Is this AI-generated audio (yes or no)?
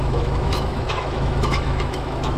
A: yes